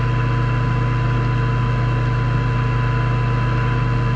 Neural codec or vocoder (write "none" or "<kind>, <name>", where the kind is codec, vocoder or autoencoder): none